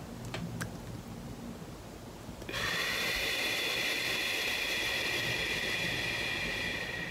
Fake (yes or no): no